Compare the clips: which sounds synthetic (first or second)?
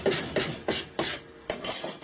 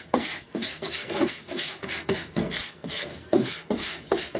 second